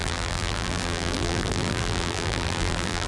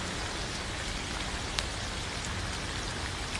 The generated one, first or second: first